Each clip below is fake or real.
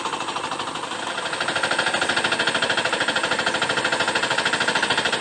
real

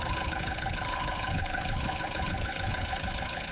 fake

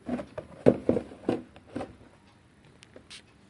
real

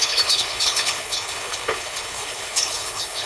fake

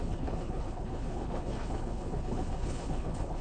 fake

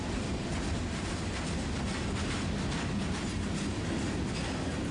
real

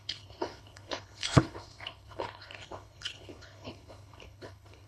fake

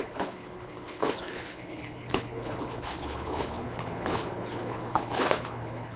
fake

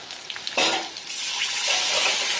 real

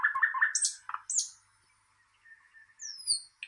real